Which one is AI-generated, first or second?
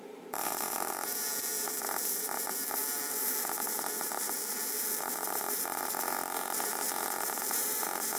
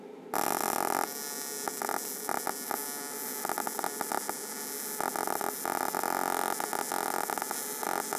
first